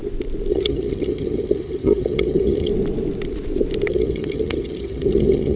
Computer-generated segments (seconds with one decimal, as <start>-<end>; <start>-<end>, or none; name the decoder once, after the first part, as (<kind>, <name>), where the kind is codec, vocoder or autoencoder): 0.5-2.7 (vocoder, HiFi-GAN); 3.9-5.6